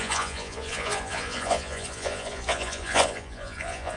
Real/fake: fake